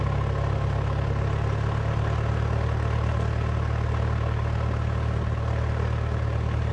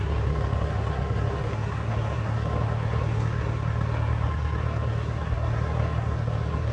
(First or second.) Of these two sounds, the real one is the first